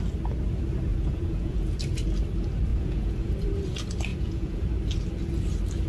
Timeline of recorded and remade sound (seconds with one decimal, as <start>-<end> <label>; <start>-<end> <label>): 0.0-0.9 recorded; 0.9-1.8 remade; 1.8-2.7 recorded; 2.7-3.3 remade; 3.3-4.1 recorded; 4.1-4.6 remade; 4.6-5.9 recorded